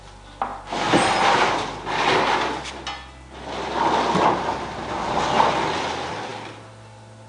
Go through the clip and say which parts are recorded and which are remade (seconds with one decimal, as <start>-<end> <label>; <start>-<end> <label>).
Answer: 0.0-7.3 recorded